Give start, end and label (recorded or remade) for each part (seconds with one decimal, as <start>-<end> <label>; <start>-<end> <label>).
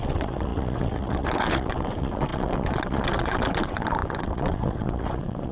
0.0-5.5 remade